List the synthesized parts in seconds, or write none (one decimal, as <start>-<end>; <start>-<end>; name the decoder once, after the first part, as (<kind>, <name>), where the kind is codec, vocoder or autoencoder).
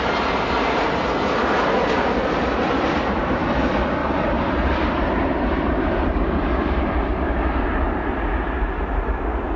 2.4-3.5 (vocoder, BigVGAN v2); 4.0-8.1